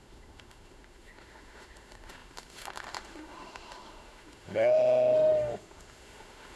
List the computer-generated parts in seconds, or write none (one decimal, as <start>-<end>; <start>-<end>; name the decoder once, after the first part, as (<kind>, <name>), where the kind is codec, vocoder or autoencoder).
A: 0.0-6.6 (autoencoder, DAC-VAE)